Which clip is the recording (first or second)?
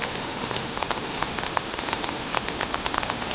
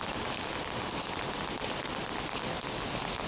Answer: second